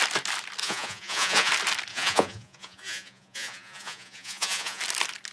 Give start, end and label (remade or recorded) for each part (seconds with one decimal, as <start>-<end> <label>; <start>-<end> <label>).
0.0-0.6 recorded; 0.6-1.5 remade; 1.5-1.9 recorded; 1.9-4.8 remade; 4.8-5.3 recorded